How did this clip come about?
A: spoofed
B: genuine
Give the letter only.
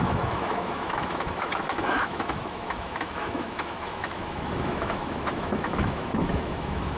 A